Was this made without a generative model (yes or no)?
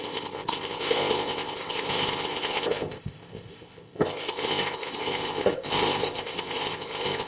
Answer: no